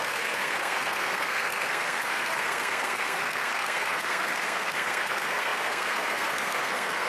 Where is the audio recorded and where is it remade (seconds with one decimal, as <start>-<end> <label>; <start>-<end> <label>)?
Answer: 0.0-7.1 remade